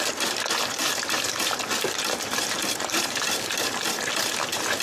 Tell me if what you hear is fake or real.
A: fake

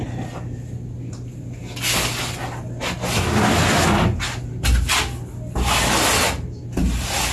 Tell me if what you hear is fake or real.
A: real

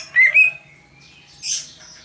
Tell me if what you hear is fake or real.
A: real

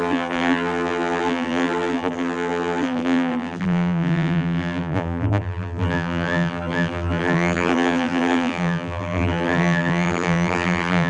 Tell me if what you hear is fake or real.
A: fake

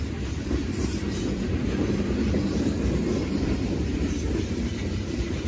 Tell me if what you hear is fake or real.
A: fake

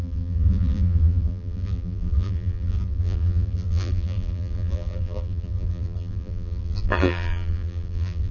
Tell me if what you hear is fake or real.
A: fake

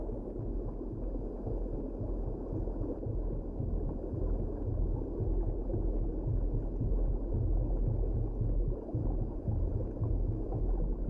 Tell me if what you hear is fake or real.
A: real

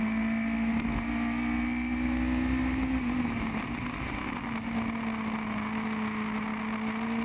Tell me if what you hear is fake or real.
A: real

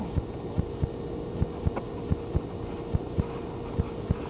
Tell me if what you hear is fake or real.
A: real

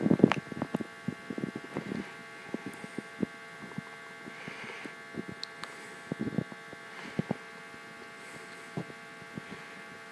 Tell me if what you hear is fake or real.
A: real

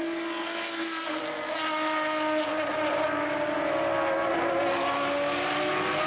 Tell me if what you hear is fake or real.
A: real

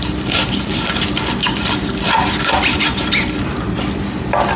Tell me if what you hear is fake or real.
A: fake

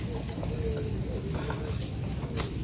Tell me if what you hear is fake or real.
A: real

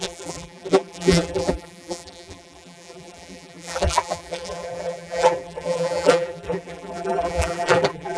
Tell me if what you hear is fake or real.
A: fake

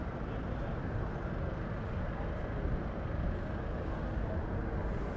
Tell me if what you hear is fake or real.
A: real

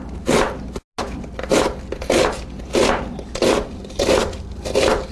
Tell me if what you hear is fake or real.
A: real